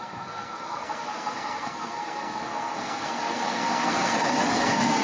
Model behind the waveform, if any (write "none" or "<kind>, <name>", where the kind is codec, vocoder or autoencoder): codec, SNAC